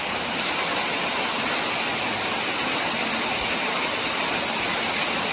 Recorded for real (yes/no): yes